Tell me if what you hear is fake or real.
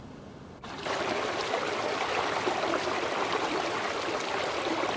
real